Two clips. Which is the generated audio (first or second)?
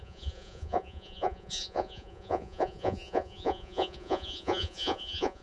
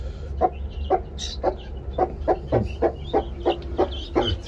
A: first